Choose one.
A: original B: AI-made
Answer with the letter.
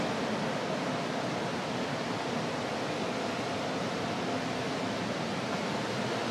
A